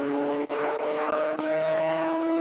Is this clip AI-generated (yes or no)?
yes